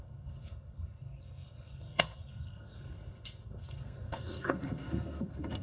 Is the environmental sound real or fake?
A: fake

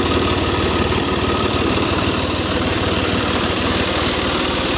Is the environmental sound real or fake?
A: fake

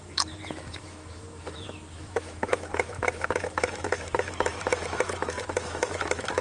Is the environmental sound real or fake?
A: fake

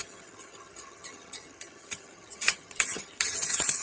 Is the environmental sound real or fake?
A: fake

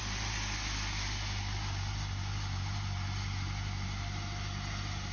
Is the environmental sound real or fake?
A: real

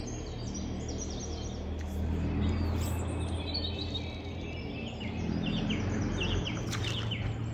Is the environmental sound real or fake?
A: real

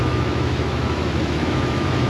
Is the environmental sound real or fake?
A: fake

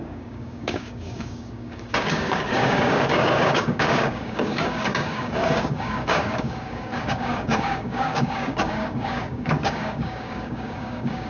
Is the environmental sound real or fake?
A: fake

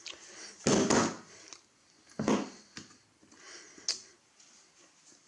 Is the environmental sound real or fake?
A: real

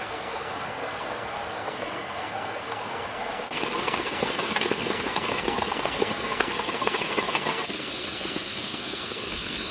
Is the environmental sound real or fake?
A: fake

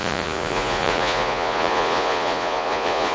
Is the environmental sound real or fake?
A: fake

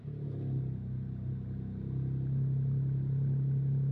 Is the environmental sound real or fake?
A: real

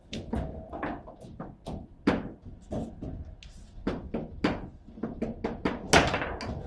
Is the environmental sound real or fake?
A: real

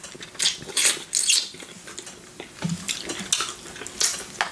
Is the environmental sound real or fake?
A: real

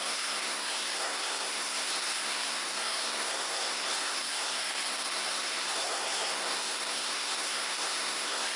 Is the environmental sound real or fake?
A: fake